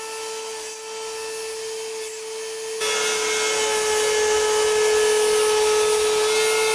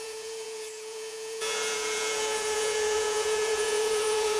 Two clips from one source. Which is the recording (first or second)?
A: first